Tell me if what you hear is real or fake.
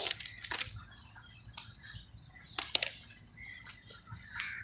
real